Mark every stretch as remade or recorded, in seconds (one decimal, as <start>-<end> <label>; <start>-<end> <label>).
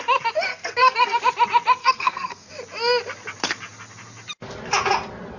0.0-0.5 recorded; 0.5-1.2 remade; 1.2-1.8 recorded; 1.8-2.5 remade; 2.5-5.4 recorded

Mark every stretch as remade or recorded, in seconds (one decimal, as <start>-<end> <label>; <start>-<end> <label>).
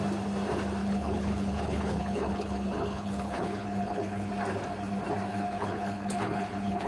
0.0-0.8 recorded; 0.8-4.3 remade; 4.3-5.3 recorded; 5.3-6.9 remade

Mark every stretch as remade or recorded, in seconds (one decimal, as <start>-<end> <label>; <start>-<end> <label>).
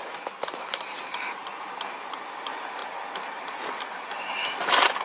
0.0-2.8 remade; 2.8-3.9 recorded; 3.9-5.0 remade